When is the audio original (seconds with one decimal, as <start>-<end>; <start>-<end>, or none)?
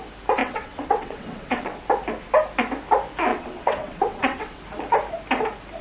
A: 0.0-0.4; 1.8-3.3; 4.6-5.8